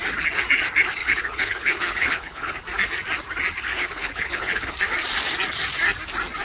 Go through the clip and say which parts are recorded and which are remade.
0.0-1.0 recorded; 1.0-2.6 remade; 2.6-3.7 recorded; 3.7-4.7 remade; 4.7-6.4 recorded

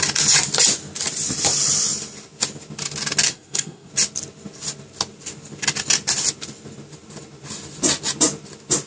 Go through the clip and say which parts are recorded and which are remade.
0.0-3.3 recorded; 3.3-3.9 remade; 3.9-8.9 recorded

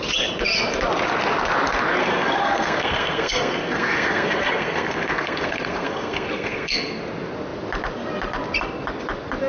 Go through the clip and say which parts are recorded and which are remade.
0.0-2.0 recorded; 2.0-7.0 remade; 7.0-9.5 recorded